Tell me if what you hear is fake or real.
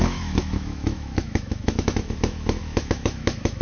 fake